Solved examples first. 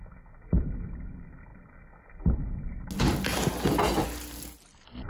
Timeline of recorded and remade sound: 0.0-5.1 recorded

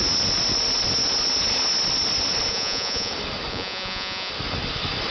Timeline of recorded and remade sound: 0.0-2.5 recorded; 2.5-3.1 remade; 3.1-3.5 recorded; 3.5-4.3 remade; 4.3-5.1 recorded

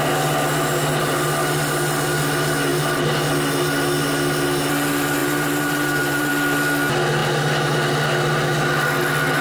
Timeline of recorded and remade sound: 0.0-5.2 recorded; 5.2-6.3 remade; 6.3-9.4 recorded

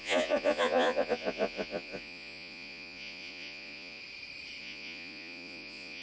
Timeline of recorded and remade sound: 0.0-4.0 remade; 4.0-4.6 recorded; 4.6-6.0 remade

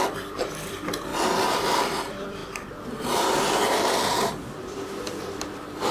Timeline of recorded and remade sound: 0.0-1.1 remade; 1.1-1.7 recorded; 1.7-5.9 remade

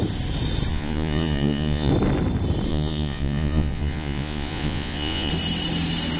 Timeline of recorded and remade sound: 0.0-0.7 recorded; 0.7-1.9 remade; 1.9-2.7 recorded; 2.7-5.3 remade; 5.3-6.2 recorded